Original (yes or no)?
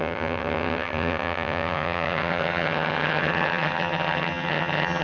no